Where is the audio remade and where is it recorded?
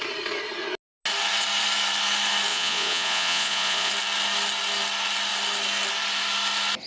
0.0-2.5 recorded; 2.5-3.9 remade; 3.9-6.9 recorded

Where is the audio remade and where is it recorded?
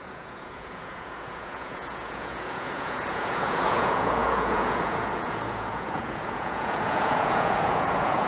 0.0-8.3 remade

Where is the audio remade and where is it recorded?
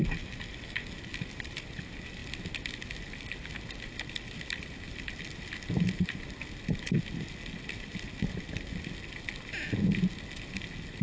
0.0-11.0 recorded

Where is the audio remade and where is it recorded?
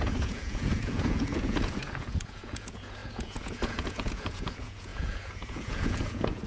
0.0-6.5 remade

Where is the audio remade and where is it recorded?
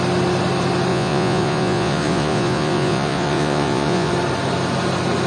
0.0-0.9 recorded; 0.9-4.1 remade; 4.1-5.3 recorded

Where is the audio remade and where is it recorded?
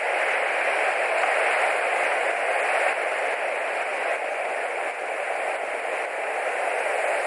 0.0-3.9 recorded; 3.9-4.9 remade; 4.9-7.3 recorded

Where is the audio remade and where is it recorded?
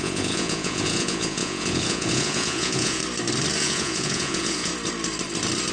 0.0-3.0 remade; 3.0-3.6 recorded; 3.6-4.7 remade; 4.7-5.7 recorded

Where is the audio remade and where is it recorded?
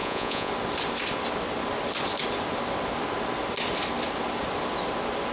0.0-0.5 remade; 0.5-5.3 recorded